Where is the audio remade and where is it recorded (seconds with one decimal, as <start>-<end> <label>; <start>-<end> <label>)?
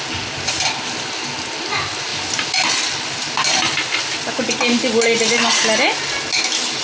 0.0-6.8 recorded